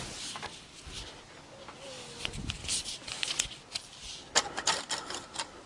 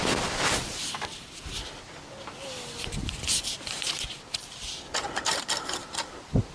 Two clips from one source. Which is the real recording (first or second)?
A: first